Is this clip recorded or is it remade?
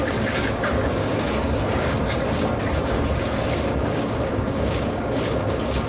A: remade